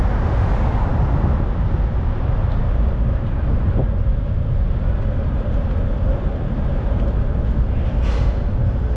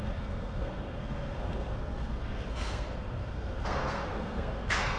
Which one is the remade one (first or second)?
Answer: second